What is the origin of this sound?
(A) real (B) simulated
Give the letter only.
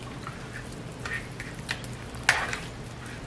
A